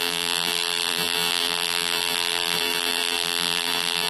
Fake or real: fake